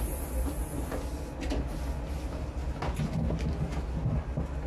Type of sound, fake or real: real